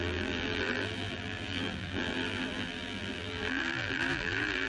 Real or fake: fake